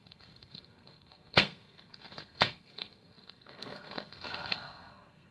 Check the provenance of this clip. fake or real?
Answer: fake